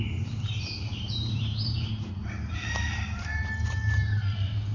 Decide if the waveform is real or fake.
fake